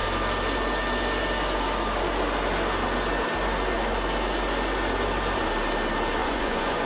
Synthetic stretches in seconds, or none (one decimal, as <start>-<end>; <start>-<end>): 6.2-6.9